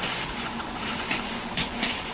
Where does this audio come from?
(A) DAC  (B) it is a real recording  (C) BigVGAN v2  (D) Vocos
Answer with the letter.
D